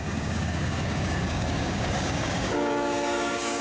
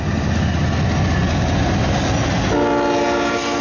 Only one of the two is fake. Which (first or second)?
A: first